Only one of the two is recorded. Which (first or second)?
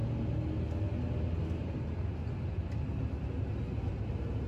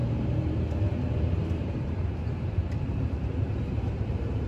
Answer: first